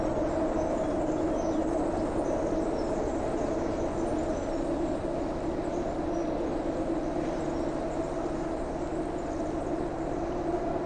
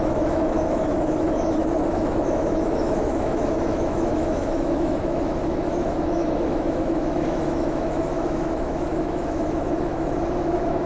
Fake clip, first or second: second